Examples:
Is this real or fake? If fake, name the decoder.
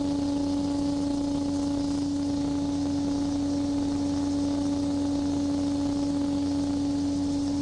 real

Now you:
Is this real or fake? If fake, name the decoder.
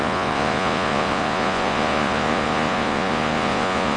fake, vocoder, Vocos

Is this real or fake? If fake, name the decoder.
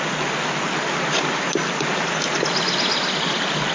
real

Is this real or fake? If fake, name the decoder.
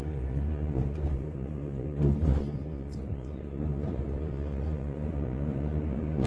fake, vocoder, Vocos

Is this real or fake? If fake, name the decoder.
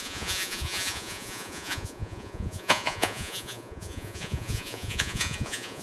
fake, vocoder, Vocos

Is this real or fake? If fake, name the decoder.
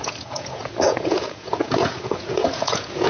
fake, vocoder, Vocos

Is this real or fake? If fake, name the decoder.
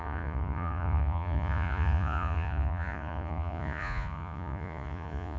fake, vocoder, Vocos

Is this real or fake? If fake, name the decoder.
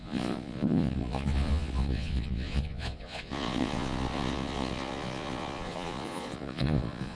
fake, vocoder, Vocos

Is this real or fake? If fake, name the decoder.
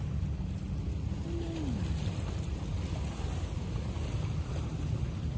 real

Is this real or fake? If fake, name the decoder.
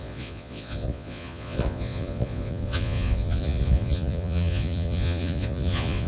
fake, vocoder, Vocos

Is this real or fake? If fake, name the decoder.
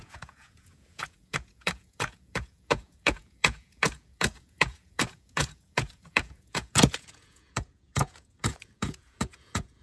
fake, vocoder, Vocos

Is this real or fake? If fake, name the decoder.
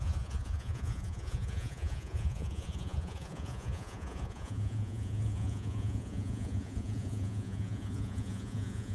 fake, vocoder, Vocos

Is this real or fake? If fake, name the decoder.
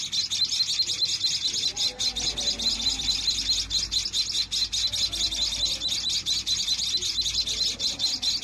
real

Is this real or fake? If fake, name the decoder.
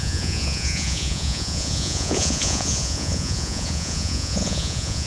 fake, vocoder, Vocos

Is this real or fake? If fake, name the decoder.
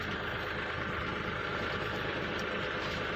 real